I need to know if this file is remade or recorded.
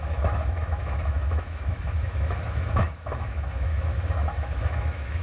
remade